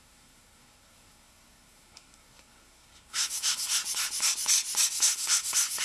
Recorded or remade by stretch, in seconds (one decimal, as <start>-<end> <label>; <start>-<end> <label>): 0.0-3.8 remade; 3.8-4.9 recorded; 4.9-5.8 remade